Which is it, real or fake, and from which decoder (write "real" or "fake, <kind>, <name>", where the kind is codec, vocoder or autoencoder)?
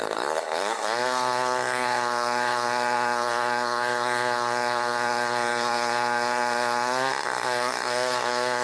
fake, codec, SNAC